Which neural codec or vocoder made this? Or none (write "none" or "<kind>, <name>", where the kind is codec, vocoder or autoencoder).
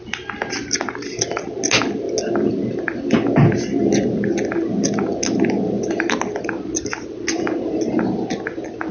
none